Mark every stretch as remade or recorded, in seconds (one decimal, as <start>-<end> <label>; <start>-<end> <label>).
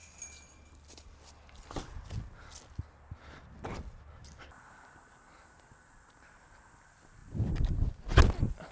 0.0-8.7 recorded